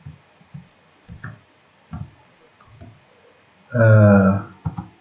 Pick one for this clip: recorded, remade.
recorded